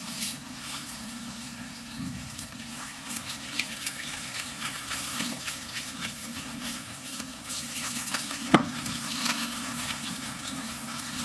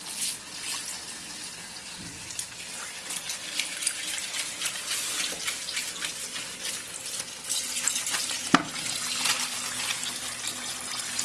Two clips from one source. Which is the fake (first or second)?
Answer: first